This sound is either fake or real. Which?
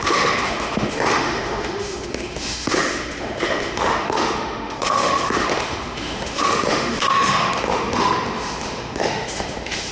fake